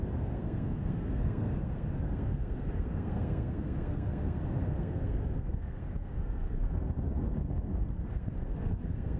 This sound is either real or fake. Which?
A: fake